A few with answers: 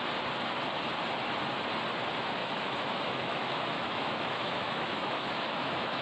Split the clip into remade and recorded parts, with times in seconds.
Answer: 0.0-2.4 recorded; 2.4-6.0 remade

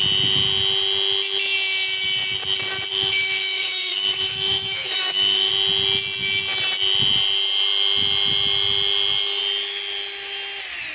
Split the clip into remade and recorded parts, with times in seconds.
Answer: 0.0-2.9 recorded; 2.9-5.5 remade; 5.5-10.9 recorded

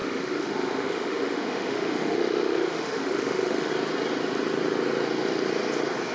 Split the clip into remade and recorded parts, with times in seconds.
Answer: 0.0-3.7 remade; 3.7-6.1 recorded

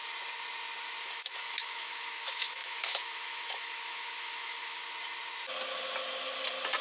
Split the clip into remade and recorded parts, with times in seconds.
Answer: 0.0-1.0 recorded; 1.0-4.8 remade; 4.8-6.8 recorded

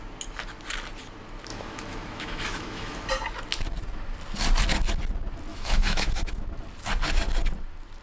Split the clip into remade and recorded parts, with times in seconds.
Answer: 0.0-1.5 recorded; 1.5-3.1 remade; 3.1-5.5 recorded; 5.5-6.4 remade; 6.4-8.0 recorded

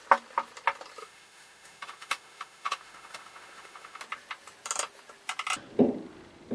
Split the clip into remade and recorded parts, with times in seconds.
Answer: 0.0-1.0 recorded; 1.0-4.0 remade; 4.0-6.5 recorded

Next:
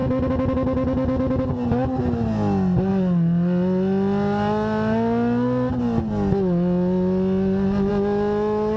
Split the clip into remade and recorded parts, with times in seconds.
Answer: 0.0-8.8 recorded

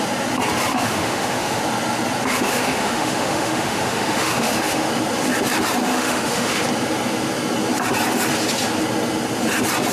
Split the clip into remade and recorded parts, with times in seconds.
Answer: 0.0-0.7 recorded; 0.7-1.6 remade; 1.6-2.3 recorded; 2.3-4.9 remade; 4.9-5.9 recorded; 5.9-6.6 remade; 6.6-9.9 recorded